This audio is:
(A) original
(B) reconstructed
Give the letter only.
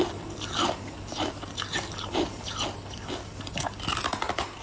A